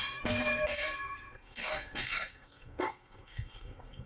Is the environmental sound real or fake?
fake